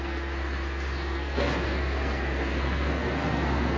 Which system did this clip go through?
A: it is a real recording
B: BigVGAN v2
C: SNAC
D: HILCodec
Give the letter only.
C